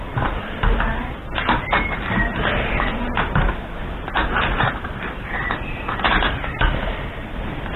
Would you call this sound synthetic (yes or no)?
no